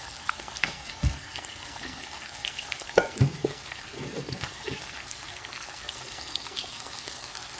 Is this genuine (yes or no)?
no